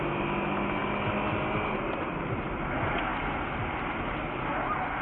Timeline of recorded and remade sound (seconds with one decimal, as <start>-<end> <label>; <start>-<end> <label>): 0.0-5.0 recorded